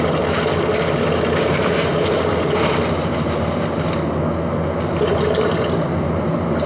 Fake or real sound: real